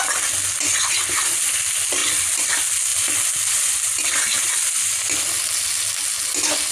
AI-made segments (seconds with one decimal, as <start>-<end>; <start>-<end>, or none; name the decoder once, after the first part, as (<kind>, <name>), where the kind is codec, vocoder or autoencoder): 2.0-2.5 (vocoder, BigVGAN v2); 2.9-3.7